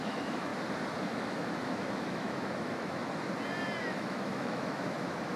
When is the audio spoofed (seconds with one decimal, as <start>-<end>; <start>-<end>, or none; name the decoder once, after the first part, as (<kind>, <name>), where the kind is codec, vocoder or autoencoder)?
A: 0.0-0.5 (autoencoder, DAC-VAE); 1.0-3.0; 3.8-5.4